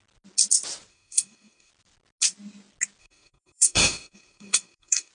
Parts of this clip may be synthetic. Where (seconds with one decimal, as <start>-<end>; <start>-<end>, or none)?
0.9-1.7; 3.0-5.1